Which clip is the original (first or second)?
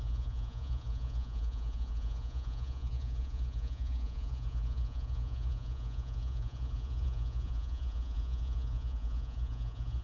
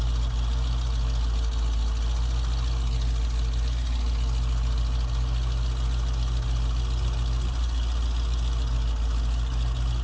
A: second